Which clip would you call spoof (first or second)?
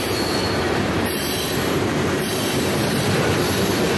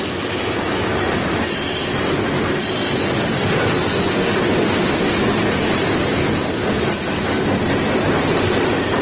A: first